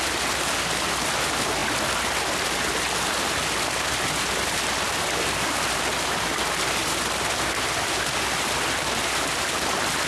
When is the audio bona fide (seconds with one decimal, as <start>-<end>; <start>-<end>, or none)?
0.0-10.1